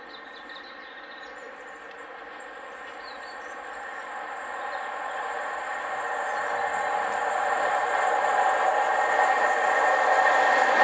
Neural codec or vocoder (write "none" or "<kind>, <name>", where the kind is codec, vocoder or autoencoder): none